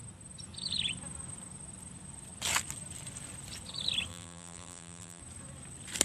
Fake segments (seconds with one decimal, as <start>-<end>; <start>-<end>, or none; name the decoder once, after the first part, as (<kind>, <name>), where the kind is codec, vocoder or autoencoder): 4.1-5.2 (vocoder, BigVGAN v2)